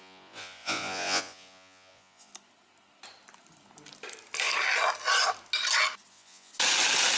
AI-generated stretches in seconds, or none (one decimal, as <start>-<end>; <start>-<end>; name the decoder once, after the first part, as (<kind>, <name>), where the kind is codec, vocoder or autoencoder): 0.0-2.3 (vocoder, Vocos); 6.1-6.5